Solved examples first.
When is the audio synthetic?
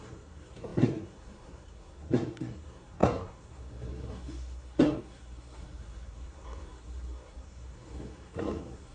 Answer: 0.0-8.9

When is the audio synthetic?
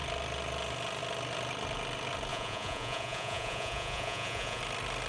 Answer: 2.3-4.6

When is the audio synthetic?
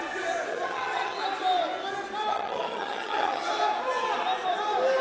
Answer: 0.5-1.2; 2.3-3.5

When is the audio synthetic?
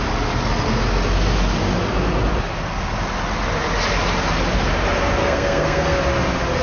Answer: 5.2-6.0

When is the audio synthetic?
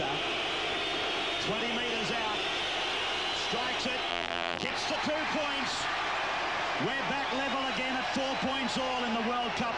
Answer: 4.1-4.7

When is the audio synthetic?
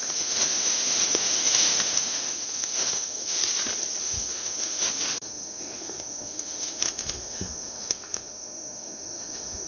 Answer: 0.0-3.4; 4.0-9.7